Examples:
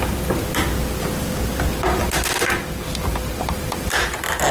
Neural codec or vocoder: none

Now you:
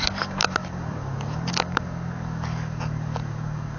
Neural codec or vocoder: codec, DAC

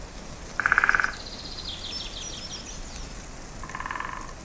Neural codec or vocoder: none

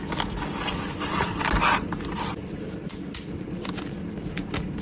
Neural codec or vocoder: none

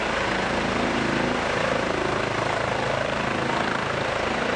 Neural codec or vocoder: none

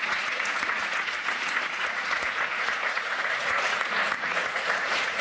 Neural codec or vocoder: vocoder, Vocos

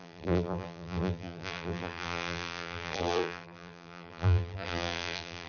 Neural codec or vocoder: vocoder, BigVGAN v2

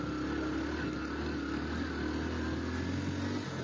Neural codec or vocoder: none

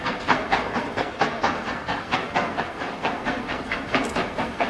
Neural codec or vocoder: codec, SNAC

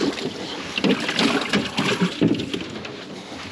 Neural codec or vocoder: none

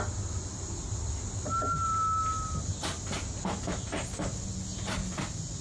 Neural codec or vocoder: none